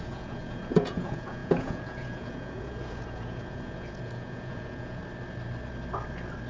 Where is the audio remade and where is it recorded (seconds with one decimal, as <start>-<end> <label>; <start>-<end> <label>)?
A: 0.0-5.0 remade; 5.0-6.5 recorded